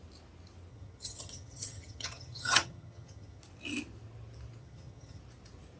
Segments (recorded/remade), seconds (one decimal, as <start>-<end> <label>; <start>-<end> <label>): 0.0-0.7 recorded; 0.7-3.4 remade; 3.4-4.6 recorded; 4.6-5.2 remade; 5.2-5.8 recorded